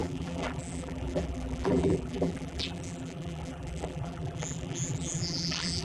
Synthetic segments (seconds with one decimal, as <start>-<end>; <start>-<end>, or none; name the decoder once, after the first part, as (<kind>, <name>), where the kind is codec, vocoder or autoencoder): 0.0-5.8 (vocoder, BigVGAN v2)